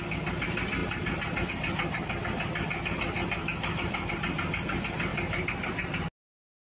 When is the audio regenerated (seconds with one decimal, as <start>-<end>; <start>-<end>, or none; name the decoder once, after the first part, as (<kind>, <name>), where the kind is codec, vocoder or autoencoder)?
3.4-4.1 (autoencoder, DAC-VAE)